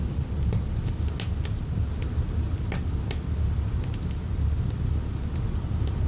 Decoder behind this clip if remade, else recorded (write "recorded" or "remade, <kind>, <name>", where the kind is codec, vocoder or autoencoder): recorded